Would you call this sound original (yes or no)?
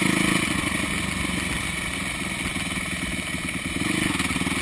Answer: yes